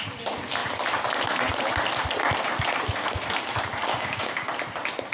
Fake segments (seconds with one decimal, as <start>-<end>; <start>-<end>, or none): 3.9-4.5